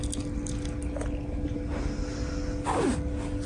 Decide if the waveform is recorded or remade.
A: recorded